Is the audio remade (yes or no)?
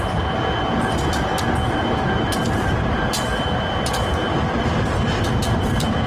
no